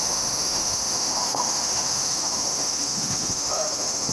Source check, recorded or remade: remade